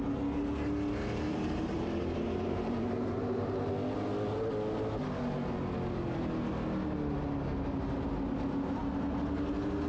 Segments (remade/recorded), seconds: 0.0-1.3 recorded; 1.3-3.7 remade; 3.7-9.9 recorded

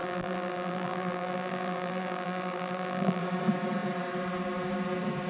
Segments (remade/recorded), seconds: 0.0-3.2 remade; 3.2-5.3 recorded

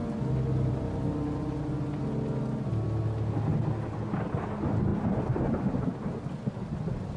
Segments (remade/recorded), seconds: 0.0-4.9 recorded; 4.9-6.2 remade; 6.2-7.2 recorded

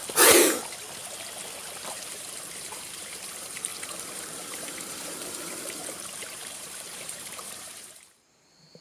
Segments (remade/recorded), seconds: 0.0-1.9 recorded; 1.9-8.8 remade

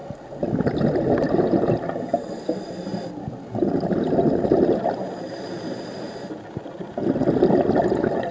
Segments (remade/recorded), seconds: 0.0-1.0 remade; 1.0-8.3 recorded